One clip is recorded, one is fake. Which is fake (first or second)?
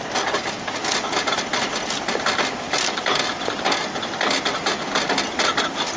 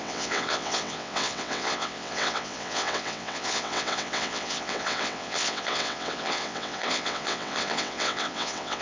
second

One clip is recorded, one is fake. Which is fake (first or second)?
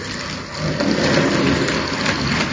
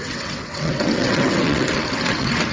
second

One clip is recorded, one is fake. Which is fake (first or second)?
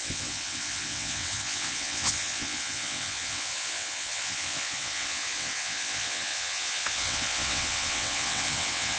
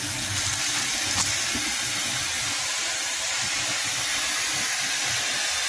first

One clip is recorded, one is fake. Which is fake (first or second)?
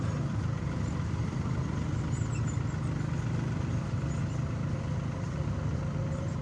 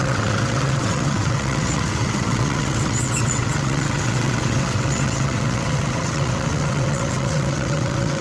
second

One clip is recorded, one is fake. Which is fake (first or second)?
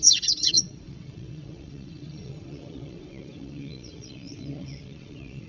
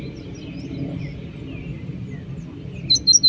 first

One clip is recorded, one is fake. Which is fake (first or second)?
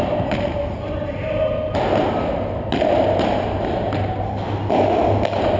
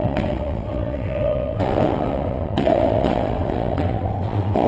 second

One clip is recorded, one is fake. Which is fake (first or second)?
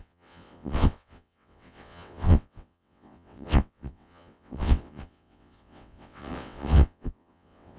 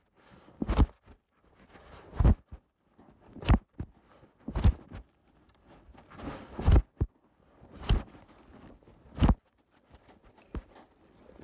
first